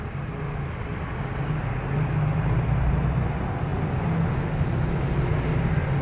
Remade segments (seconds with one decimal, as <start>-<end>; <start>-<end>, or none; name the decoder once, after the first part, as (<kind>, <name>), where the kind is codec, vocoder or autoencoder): none